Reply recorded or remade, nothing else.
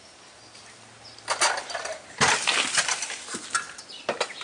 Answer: recorded